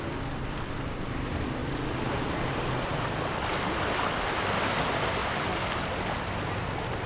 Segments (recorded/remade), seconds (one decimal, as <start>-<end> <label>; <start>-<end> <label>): 0.0-5.2 recorded; 5.2-5.9 remade; 5.9-7.1 recorded